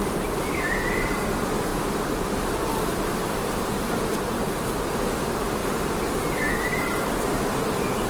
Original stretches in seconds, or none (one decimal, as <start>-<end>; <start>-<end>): none